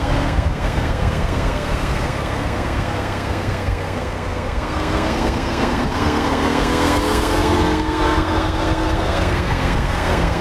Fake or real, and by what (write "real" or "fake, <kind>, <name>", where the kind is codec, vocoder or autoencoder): fake, codec, SNAC